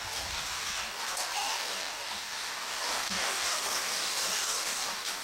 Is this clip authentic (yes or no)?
no